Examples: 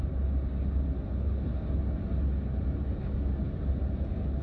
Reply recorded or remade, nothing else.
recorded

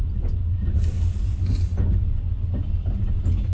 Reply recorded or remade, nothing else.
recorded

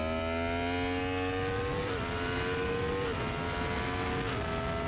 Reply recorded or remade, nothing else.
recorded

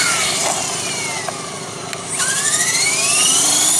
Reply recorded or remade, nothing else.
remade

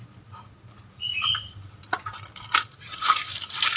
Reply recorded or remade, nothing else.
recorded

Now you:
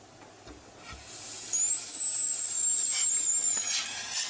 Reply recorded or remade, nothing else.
recorded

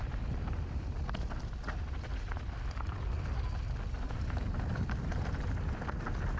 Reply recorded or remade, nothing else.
recorded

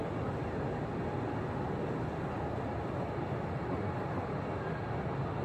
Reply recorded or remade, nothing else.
recorded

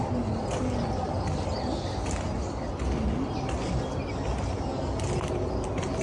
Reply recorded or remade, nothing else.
recorded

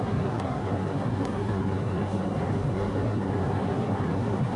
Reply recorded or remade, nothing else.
remade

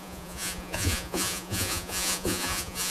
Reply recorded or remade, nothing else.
remade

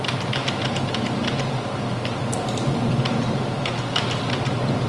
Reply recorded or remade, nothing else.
recorded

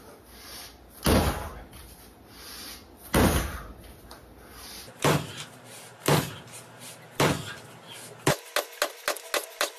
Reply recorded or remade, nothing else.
recorded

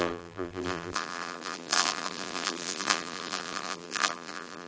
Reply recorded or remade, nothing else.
remade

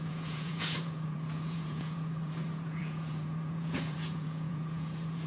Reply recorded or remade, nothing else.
remade